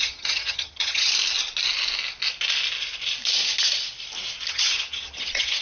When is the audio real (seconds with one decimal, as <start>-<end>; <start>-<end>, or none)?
1.1-4.5